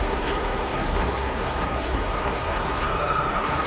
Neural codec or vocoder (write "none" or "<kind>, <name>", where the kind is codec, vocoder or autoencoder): codec, SNAC